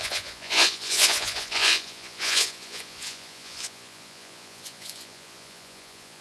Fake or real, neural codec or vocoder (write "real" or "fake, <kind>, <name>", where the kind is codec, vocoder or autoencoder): fake, vocoder, Vocos